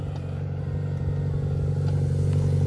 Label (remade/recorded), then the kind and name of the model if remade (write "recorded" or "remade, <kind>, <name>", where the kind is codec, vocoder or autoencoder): recorded